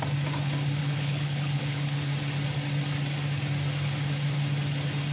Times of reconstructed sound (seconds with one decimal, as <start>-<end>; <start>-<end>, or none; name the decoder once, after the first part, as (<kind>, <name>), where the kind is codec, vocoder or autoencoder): 0.8-2.1 (codec, HILCodec)